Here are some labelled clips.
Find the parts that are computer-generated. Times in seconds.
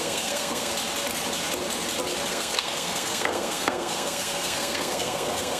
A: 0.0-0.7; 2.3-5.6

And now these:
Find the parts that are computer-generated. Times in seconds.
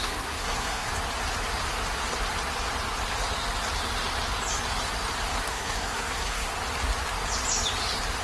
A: 0.0-0.9; 5.5-6.5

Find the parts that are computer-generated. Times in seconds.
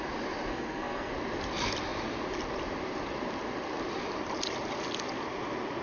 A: 0.5-1.1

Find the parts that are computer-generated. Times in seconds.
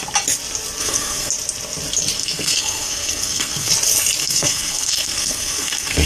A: 0.8-1.3; 2.2-3.7; 4.2-6.1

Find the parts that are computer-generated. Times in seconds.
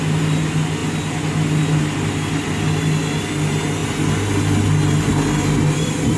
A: none